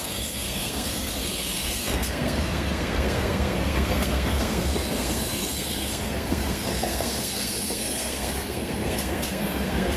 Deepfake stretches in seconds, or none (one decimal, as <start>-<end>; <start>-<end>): 0.0-10.0